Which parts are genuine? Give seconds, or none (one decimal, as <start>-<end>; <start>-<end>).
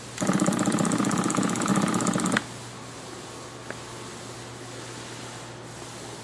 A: 0.0-6.2